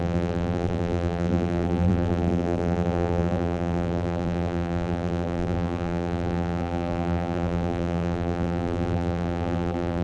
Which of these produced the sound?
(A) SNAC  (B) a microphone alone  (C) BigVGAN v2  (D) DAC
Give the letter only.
C